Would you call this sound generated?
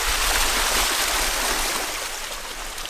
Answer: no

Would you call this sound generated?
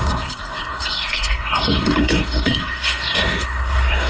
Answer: yes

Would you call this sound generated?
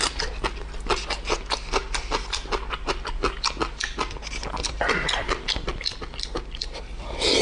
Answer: no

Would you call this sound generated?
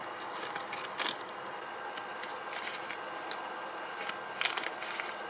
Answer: no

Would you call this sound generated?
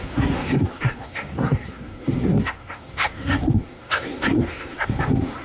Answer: yes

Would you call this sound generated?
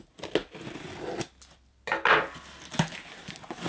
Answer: no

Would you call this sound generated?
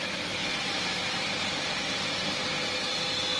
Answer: no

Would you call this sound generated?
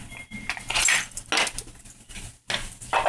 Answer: no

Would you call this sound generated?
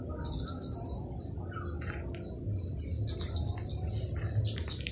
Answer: no